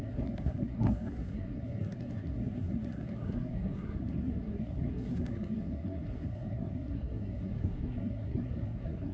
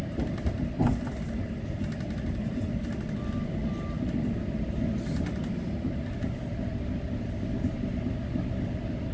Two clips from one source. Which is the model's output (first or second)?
first